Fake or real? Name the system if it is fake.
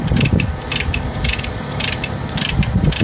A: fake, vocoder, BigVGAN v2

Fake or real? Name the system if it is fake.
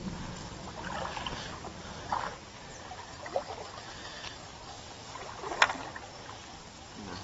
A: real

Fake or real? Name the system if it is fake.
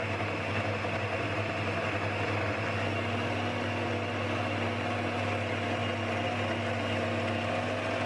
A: real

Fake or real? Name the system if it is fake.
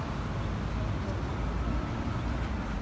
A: real